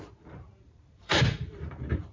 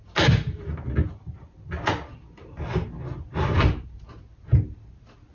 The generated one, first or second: first